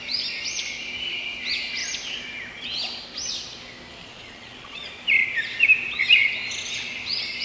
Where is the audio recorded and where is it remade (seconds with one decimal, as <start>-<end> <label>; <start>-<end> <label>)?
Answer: 0.0-4.0 recorded; 4.0-4.9 remade; 4.9-7.4 recorded